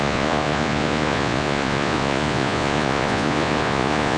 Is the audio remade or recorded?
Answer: remade